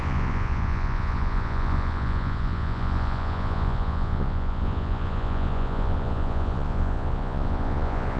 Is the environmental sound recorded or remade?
remade